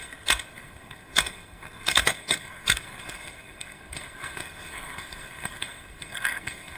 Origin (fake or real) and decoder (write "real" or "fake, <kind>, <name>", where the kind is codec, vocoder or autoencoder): fake, codec, SNAC